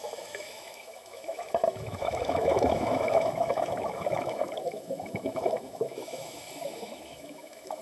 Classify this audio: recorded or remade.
remade